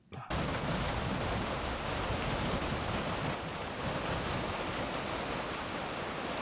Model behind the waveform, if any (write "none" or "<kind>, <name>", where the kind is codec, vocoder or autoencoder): none